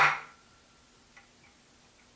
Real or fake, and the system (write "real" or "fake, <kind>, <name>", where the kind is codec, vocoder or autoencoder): real